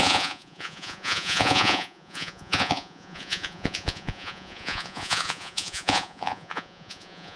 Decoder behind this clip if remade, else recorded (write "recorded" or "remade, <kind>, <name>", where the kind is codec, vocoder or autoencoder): remade, vocoder, Vocos